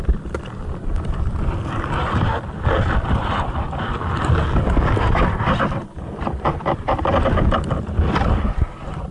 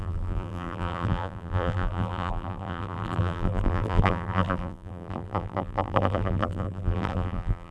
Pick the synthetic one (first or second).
second